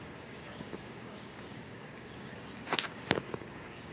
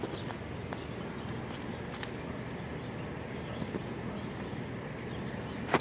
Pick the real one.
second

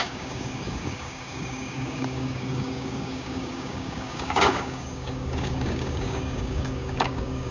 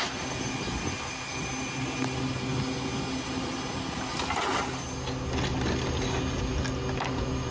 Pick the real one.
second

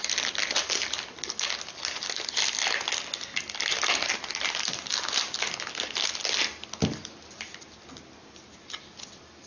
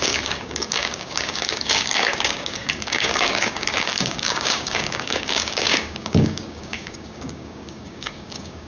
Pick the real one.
first